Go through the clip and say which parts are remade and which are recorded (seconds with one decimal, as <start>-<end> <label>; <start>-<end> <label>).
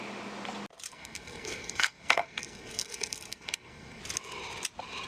0.0-0.9 recorded; 0.9-4.0 remade; 4.0-5.1 recorded